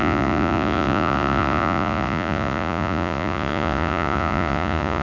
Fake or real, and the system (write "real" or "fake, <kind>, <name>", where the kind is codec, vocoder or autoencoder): fake, vocoder, Vocos